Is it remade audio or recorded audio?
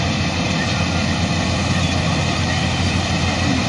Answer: recorded